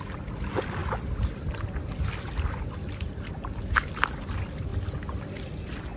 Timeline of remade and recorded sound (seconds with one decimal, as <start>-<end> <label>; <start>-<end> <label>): 0.0-3.3 recorded; 3.3-3.9 remade; 3.9-6.0 recorded

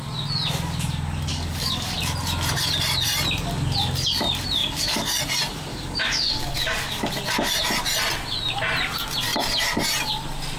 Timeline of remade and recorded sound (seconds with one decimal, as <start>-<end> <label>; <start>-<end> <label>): 0.0-1.3 recorded; 1.3-2.0 remade; 2.0-4.6 recorded; 4.6-5.2 remade; 5.2-5.7 recorded; 5.7-7.0 remade; 7.0-10.6 recorded